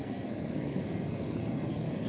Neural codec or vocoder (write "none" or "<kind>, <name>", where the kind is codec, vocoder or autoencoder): codec, SNAC